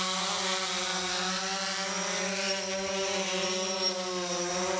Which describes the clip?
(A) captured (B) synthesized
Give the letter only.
A